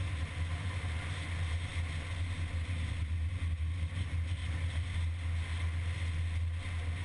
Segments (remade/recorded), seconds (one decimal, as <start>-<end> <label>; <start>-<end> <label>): 0.0-4.4 recorded; 4.4-5.0 remade; 5.0-7.0 recorded